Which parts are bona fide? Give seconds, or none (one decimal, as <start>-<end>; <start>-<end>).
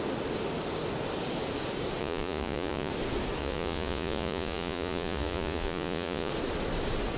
0.0-2.0; 2.9-3.4; 6.3-7.2